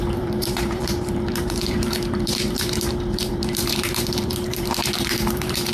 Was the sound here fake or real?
fake